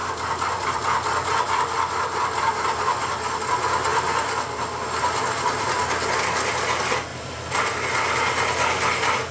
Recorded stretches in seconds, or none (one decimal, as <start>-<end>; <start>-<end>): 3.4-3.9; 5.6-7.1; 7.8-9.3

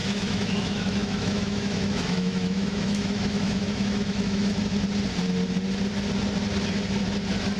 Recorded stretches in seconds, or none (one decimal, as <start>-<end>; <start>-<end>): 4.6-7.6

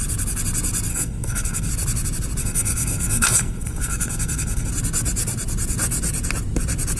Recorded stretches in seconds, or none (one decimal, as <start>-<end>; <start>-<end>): 0.0-0.9; 1.7-2.4; 4.7-7.0

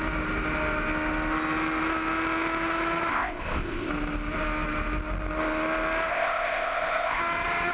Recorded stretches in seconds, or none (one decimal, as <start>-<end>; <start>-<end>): 0.0-3.1; 3.9-6.1; 7.2-7.7

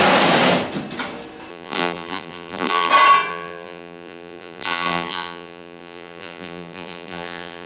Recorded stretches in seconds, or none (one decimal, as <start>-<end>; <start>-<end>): 0.0-1.5; 2.9-3.3

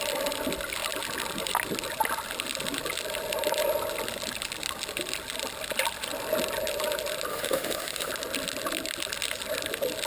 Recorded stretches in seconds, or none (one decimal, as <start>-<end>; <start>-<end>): 0.0-7.3; 8.1-10.1

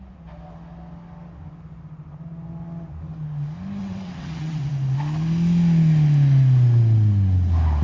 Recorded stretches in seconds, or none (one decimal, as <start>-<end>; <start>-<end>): 0.0-3.8; 4.7-7.8

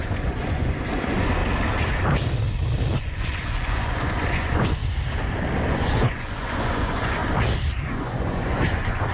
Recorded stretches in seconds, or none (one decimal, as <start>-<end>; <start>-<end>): 1.4-3.0; 4.8-5.7; 7.2-7.8